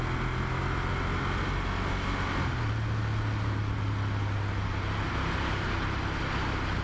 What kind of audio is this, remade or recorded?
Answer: recorded